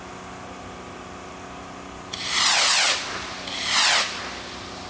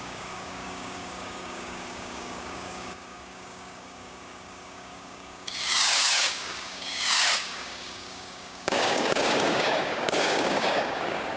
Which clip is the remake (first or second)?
second